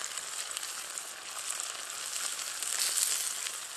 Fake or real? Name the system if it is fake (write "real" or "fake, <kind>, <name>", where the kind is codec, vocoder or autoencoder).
real